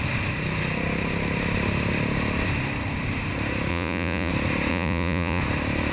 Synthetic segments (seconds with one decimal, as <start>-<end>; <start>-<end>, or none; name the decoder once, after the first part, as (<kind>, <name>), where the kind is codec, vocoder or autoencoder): 3.7-4.3 (vocoder, Vocos); 4.7-5.4